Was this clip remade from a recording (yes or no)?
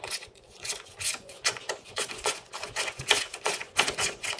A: yes